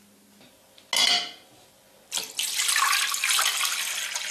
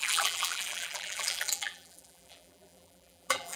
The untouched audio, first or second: first